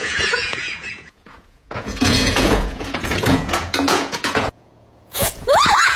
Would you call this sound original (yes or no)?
no